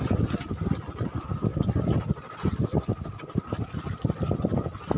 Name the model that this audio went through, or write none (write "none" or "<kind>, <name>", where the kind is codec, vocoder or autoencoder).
none